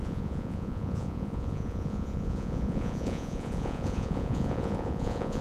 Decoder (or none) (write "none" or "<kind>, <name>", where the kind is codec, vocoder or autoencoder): vocoder, Vocos